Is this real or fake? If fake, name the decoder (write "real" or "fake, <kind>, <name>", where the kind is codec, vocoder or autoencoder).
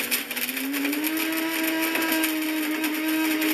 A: real